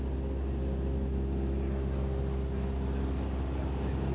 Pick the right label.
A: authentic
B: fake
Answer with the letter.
A